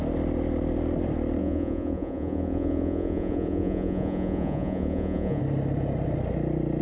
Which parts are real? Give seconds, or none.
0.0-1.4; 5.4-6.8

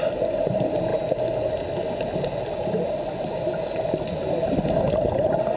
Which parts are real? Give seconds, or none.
0.0-5.6

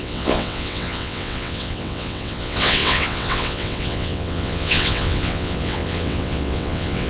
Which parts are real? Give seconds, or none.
none

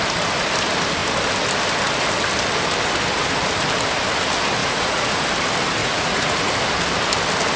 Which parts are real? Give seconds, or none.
0.0-4.6; 5.2-5.8; 6.5-7.6

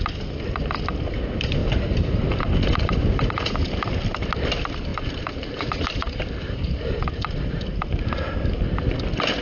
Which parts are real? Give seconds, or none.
0.0-1.6; 3.3-4.9; 7.5-9.4

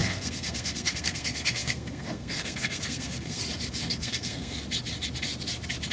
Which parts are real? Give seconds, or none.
3.4-3.9; 4.6-5.9